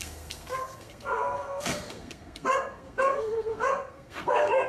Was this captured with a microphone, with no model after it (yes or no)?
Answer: no